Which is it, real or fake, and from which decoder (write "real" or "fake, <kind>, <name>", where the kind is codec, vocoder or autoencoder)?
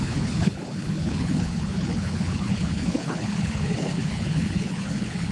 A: fake, codec, HILCodec